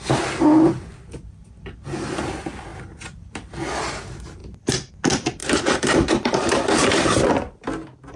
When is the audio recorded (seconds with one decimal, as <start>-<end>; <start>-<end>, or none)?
0.0-2.7; 4.0-4.4; 4.9-5.4; 7.2-8.2